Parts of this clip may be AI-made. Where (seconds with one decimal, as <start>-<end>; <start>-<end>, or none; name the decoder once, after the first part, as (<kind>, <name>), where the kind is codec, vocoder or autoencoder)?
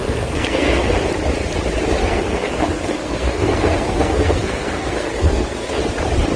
0.0-0.9 (codec, SNAC); 2.0-5.8